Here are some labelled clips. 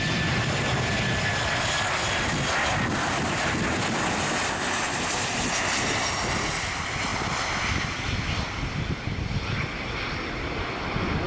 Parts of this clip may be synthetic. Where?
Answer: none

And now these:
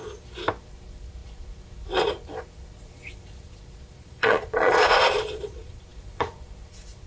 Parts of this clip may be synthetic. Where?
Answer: 0.6-7.1 (vocoder, Vocos)

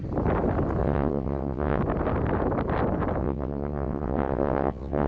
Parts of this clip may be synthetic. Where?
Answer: 0.8-1.8 (vocoder, WaveNeXt); 3.2-5.1

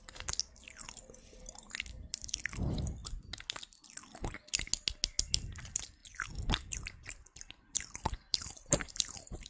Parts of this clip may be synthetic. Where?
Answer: 0.0-3.0 (vocoder, BigVGAN v2); 5.3-6.0; 6.7-9.5

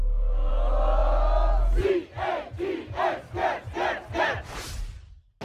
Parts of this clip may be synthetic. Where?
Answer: 0.0-0.5 (codec, SNAC)

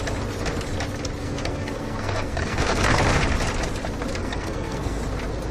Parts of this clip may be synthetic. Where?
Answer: 1.2-3.0 (codec, SNAC); 4.2-5.0